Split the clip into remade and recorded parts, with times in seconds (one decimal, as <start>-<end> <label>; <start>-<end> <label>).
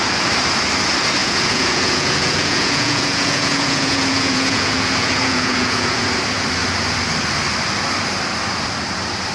0.0-1.2 recorded; 1.2-6.0 remade; 6.0-9.3 recorded